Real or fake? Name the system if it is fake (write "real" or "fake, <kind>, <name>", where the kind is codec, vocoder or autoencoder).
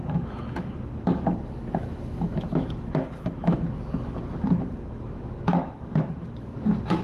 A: fake, autoencoder, DAC-VAE